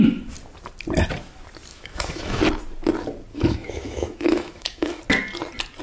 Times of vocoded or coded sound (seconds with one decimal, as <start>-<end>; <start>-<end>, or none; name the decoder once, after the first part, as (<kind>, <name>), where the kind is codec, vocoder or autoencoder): 1.7-2.4 (autoencoder, DAC-VAE); 3.3-5.0